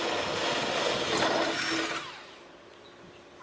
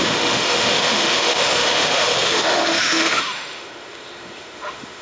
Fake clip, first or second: second